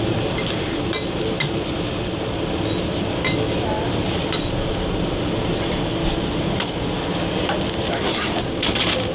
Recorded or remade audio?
recorded